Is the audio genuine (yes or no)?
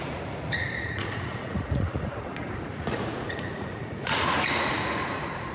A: no